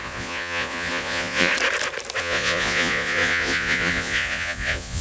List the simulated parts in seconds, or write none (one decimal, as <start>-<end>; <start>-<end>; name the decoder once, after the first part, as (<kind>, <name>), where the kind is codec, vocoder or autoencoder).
0.0-1.5 (vocoder, Vocos); 2.2-5.0